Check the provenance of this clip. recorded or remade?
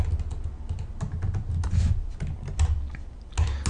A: recorded